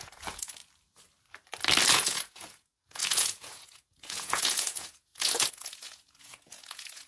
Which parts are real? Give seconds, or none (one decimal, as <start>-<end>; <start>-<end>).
0.6-1.9